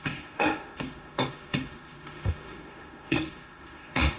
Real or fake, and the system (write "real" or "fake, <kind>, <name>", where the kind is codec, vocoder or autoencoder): fake, autoencoder, DAC-VAE